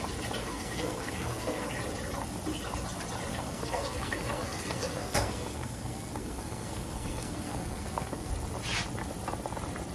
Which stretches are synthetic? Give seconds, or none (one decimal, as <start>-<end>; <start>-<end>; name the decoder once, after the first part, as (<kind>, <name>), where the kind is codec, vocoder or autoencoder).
0.4-1.7 (codec, SNAC); 3.3-8.3